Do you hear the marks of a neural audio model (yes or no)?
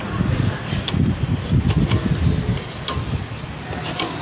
no